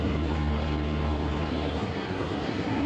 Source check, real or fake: fake